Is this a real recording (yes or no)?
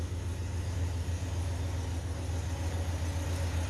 yes